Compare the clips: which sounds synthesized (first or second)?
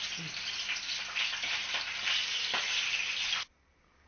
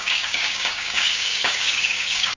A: second